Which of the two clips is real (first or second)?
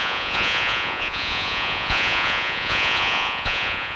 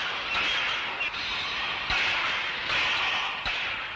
second